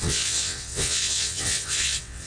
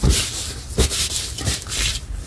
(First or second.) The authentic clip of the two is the second